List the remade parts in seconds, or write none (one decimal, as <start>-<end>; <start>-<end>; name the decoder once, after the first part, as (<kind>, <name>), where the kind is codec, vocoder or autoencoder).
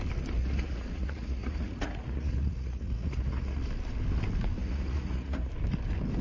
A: 0.4-3.6 (vocoder, Vocos); 4.6-5.5